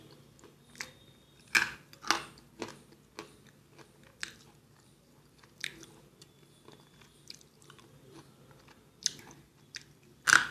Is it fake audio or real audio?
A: real